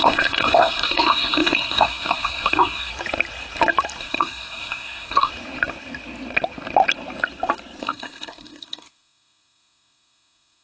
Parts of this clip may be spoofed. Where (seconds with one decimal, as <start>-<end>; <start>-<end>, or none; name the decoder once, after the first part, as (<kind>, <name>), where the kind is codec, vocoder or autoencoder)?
0.0-2.9 (codec, SNAC); 4.0-5.3; 7.8-10.6